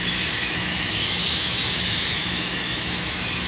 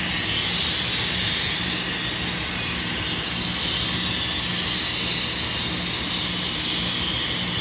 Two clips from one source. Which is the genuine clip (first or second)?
second